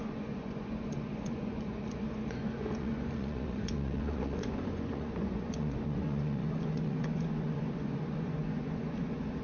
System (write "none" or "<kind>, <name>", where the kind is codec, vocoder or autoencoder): vocoder, Vocos